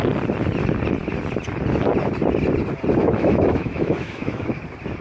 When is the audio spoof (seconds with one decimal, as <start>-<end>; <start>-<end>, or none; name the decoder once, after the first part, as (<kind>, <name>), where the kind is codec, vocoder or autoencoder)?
3.0-4.6 (autoencoder, DAC-VAE)